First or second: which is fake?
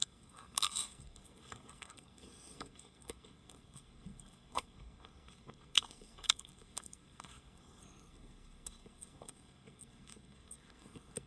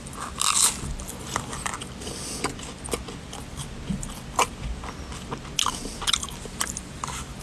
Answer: first